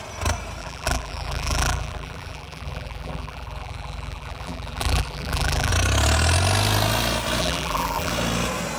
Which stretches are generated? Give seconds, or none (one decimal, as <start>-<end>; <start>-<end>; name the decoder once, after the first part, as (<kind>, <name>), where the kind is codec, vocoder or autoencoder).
0.6-5.7 (vocoder, BigVGAN v2); 7.4-8.1